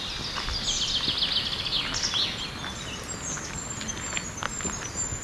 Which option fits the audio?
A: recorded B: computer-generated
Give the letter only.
A